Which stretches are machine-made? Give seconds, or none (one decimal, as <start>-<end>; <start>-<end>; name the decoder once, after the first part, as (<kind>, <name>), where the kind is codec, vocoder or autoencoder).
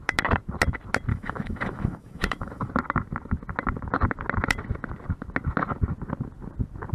1.1-2.7 (autoencoder, DAC-VAE)